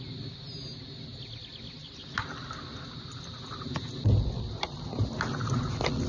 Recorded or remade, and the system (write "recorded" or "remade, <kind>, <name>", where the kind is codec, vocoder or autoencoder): recorded